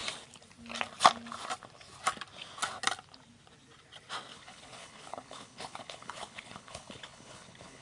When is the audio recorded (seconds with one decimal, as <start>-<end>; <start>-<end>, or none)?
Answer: 0.0-4.3